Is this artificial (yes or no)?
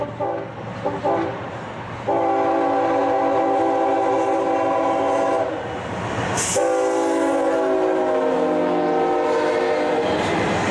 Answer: no